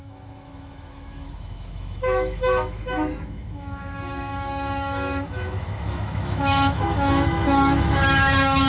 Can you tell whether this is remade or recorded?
remade